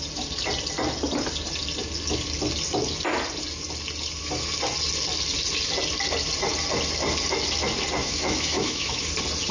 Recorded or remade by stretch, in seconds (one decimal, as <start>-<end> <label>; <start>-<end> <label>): 0.0-8.0 recorded; 8.0-9.1 remade; 9.1-9.5 recorded